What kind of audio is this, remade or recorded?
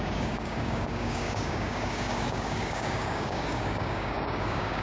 remade